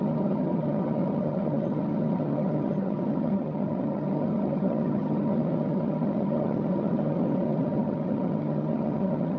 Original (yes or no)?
no